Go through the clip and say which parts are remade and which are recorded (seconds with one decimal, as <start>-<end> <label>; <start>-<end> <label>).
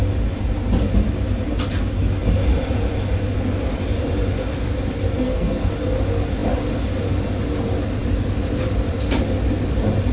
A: 0.0-5.1 recorded; 5.1-5.7 remade; 5.7-10.1 recorded